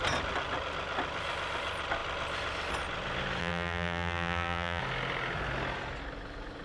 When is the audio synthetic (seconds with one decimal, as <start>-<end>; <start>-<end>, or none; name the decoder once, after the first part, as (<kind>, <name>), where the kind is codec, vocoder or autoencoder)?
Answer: 3.4-4.8 (vocoder, BigVGAN v2)